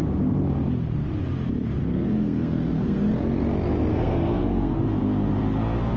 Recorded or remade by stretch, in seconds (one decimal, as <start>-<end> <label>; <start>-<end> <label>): 0.0-1.8 recorded; 1.8-3.1 remade; 3.1-3.9 recorded; 3.9-4.8 remade; 4.8-6.0 recorded